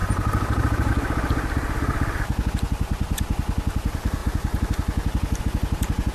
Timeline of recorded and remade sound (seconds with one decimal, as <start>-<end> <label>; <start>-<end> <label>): 0.0-0.9 remade; 0.9-6.1 recorded